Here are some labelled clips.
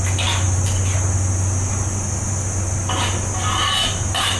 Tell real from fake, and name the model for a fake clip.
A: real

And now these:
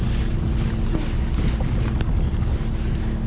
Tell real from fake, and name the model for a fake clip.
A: real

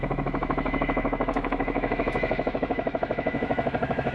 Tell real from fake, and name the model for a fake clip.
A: fake, autoencoder, DAC-VAE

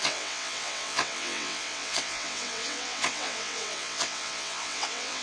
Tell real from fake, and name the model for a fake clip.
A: fake, vocoder, WaveNeXt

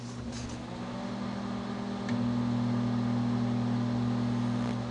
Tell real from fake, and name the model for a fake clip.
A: real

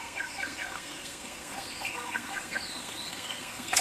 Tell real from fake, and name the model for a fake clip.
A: fake, codec, SNAC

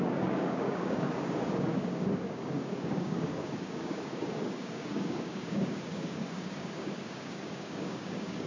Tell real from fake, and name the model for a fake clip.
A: fake, codec, DAC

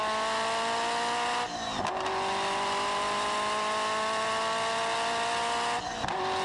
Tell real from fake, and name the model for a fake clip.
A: real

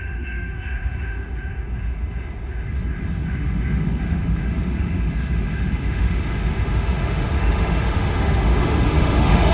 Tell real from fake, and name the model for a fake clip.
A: fake, autoencoder, DAC-VAE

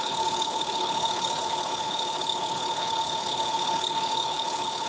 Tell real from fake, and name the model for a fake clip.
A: fake, codec, HILCodec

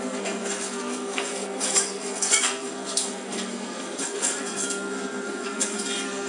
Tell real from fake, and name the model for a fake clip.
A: fake, codec, SNAC